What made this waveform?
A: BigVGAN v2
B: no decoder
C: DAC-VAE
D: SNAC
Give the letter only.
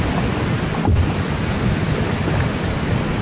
B